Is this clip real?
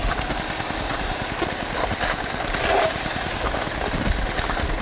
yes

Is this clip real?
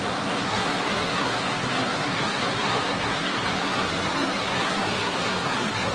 no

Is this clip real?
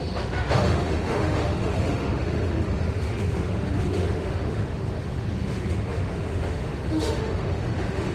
no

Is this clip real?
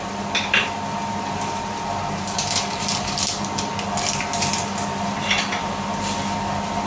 yes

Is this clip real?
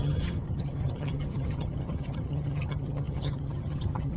no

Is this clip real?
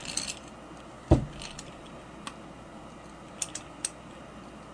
yes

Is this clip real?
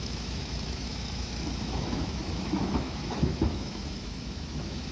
no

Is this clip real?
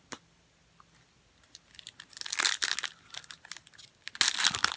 yes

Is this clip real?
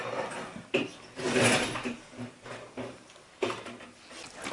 yes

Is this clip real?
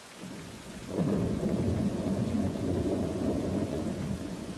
no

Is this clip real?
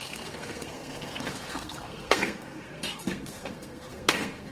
no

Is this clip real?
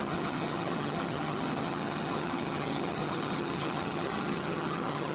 no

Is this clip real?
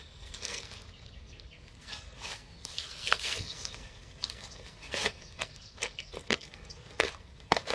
no